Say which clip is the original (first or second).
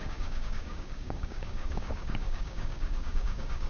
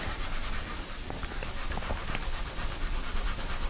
second